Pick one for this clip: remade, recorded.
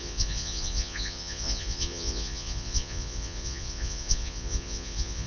remade